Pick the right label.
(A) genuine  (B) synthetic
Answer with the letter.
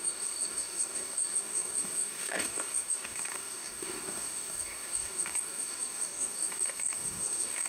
B